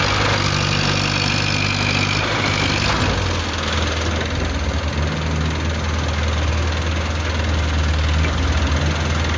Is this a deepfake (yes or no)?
no